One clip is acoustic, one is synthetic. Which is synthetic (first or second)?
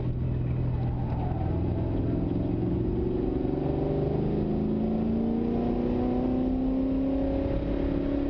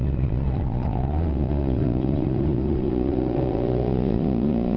second